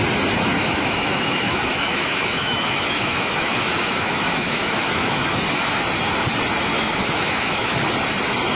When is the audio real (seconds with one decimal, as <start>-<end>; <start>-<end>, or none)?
0.0-0.5; 5.4-6.7; 7.8-8.5